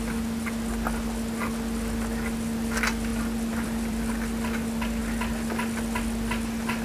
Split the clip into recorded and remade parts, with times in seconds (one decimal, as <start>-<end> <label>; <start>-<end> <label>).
0.0-3.1 recorded; 3.1-4.1 remade; 4.1-6.8 recorded